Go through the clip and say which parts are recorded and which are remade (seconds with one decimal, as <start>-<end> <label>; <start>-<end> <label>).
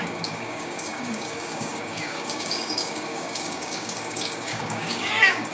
0.0-5.5 remade